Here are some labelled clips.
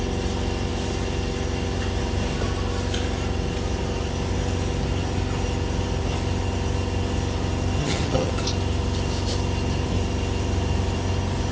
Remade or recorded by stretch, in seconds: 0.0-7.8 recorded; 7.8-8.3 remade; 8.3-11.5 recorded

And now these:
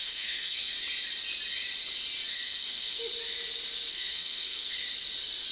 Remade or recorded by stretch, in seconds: 0.0-0.7 remade; 0.7-2.3 recorded; 2.3-3.0 remade; 3.0-3.9 recorded; 3.9-4.7 remade; 4.7-5.5 recorded